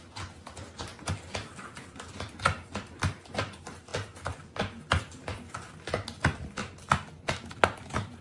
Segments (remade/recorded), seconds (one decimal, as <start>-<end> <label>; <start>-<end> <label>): 0.0-0.9 remade; 0.9-3.4 recorded; 3.4-3.9 remade; 3.9-8.2 recorded